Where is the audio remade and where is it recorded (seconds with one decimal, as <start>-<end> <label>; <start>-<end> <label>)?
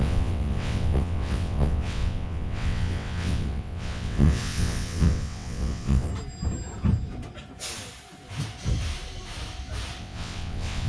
0.0-6.1 remade; 6.1-10.0 recorded; 10.0-10.9 remade